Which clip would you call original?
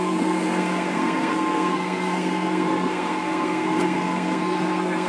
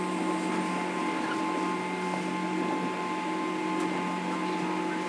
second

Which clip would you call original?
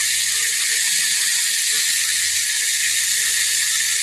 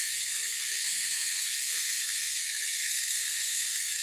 first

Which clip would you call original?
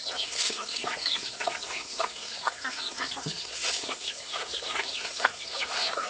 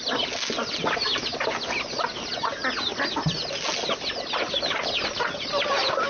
second